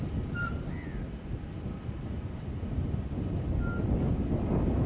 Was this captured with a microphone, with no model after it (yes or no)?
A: yes